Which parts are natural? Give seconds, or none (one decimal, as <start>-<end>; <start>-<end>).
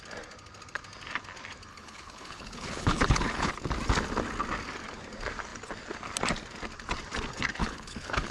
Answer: 0.0-1.7; 3.5-7.6